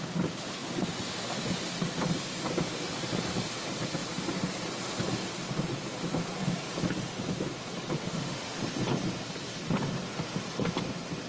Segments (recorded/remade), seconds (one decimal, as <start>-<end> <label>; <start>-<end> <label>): 0.0-8.0 recorded; 8.0-8.6 remade; 8.6-11.3 recorded